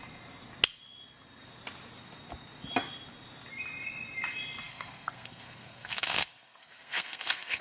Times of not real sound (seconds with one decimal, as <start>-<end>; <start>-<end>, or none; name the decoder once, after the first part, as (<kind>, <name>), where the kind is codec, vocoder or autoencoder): 4.6-7.6 (codec, SNAC)